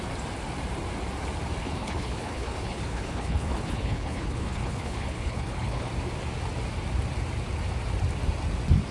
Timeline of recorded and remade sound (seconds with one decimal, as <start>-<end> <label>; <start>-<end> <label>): 0.0-1.6 recorded; 1.6-5.9 remade; 5.9-8.9 recorded